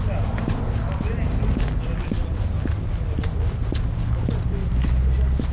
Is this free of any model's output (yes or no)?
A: yes